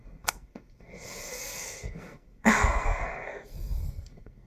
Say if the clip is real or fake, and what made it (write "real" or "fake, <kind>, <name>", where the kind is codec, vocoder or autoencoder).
fake, codec, SNAC